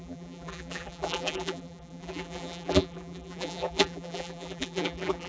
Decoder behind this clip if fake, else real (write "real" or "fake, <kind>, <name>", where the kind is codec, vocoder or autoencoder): fake, vocoder, BigVGAN v2